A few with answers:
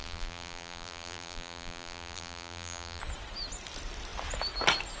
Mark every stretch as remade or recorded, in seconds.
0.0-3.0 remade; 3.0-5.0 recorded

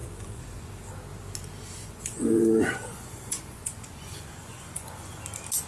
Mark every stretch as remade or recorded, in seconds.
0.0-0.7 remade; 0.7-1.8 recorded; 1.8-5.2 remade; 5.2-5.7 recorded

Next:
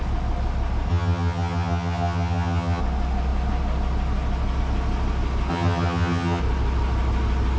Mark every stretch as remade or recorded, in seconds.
0.0-0.9 recorded; 0.9-2.8 remade; 2.8-5.5 recorded; 5.5-6.4 remade; 6.4-7.6 recorded

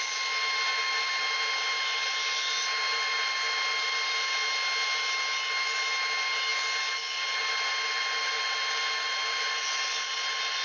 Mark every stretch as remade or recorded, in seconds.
0.0-10.6 recorded

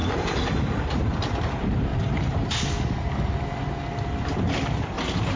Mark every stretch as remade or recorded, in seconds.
0.0-1.3 remade; 1.3-1.9 recorded; 1.9-5.4 remade

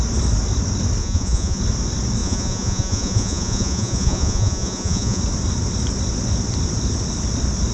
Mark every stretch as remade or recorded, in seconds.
0.0-1.0 recorded; 1.0-1.6 remade; 1.6-2.2 recorded; 2.2-5.2 remade; 5.2-7.7 recorded

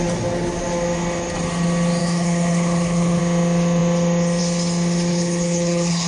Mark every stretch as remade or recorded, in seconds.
0.0-2.0 recorded; 2.0-3.2 remade; 3.2-5.1 recorded; 5.1-6.1 remade